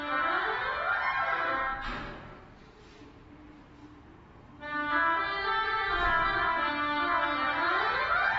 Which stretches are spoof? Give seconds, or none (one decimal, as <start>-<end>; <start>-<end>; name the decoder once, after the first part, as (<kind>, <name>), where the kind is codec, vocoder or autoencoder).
0.0-0.6 (vocoder, BigVGAN v2); 1.1-1.7; 2.8-8.4